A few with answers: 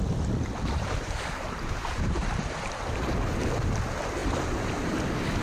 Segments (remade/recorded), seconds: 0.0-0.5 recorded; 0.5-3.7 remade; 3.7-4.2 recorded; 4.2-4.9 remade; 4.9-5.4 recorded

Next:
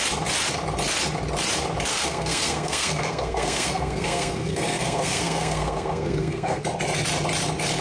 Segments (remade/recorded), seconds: 0.0-1.9 recorded; 1.9-6.6 remade; 6.6-7.8 recorded

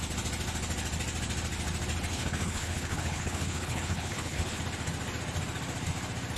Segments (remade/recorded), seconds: 0.0-2.1 recorded; 2.1-4.6 remade; 4.6-6.4 recorded

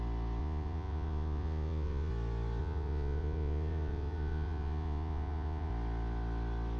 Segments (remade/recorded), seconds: 0.0-0.4 recorded; 0.4-2.1 remade; 2.1-2.6 recorded; 2.6-5.7 remade; 5.7-6.8 recorded

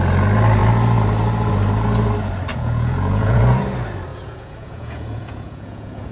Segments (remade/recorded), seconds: 0.0-2.5 recorded; 2.5-3.6 remade; 3.6-4.1 recorded; 4.1-6.1 remade